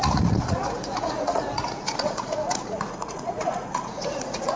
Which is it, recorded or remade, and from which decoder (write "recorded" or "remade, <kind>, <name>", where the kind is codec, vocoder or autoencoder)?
remade, vocoder, Vocos